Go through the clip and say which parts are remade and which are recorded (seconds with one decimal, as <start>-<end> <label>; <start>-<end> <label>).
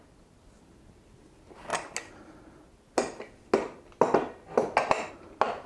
0.0-5.7 recorded